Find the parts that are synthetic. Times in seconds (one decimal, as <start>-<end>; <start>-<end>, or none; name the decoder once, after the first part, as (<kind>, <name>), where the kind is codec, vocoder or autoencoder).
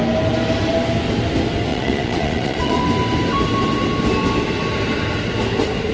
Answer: 1.7-2.8 (vocoder, Vocos)